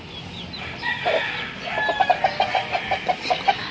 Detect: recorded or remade recorded